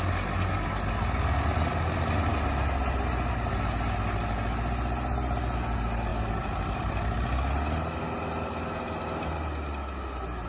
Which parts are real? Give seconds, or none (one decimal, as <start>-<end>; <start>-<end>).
0.0-10.5